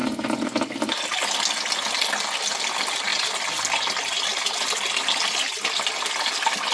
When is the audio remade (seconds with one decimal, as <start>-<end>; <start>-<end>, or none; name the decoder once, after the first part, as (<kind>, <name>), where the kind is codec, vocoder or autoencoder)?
none